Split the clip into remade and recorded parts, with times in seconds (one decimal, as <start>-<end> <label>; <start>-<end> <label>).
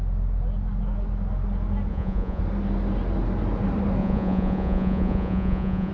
0.0-1.9 recorded; 1.9-2.4 remade; 2.4-4.0 recorded; 4.0-5.9 remade